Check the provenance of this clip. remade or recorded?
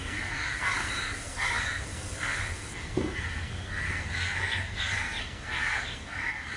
remade